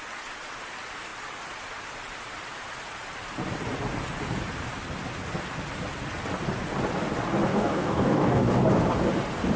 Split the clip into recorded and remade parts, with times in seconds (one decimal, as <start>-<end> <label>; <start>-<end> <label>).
0.0-7.5 recorded; 7.5-8.6 remade; 8.6-9.6 recorded